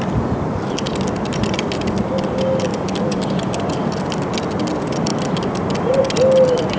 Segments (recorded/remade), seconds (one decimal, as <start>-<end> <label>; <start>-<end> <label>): 0.0-2.7 recorded; 2.7-4.2 remade; 4.2-6.8 recorded